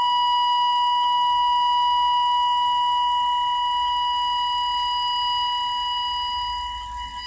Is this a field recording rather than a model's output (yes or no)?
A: yes